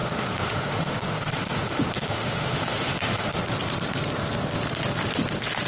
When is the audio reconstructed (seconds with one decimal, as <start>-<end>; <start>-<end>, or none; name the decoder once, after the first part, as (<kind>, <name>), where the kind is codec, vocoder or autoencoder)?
0.0-3.4 (autoencoder, DAC-VAE)